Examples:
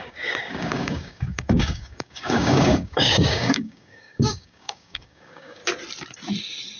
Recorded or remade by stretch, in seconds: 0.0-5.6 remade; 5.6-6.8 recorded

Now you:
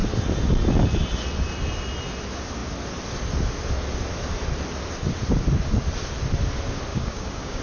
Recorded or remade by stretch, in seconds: 0.0-6.9 recorded; 6.9-7.6 remade

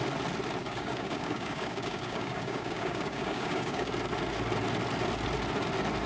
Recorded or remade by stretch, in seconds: 0.0-0.6 recorded; 0.6-3.9 remade; 3.9-6.1 recorded

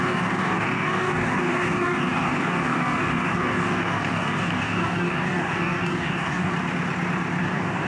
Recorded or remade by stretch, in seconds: 0.0-6.5 remade; 6.5-7.4 recorded; 7.4-7.9 remade

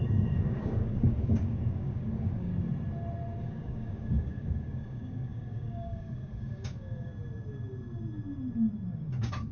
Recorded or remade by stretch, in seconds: 0.0-2.5 remade; 2.5-3.4 recorded; 3.4-7.1 remade; 7.1-8.9 recorded; 8.9-9.5 remade

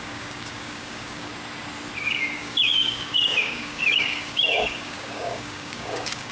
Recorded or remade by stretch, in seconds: 0.0-1.3 remade; 1.3-2.0 recorded; 2.0-6.3 remade